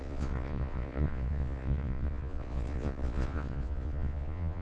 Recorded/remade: remade